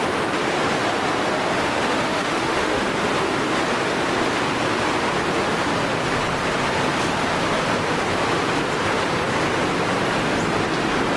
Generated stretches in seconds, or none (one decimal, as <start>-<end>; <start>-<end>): 1.7-2.8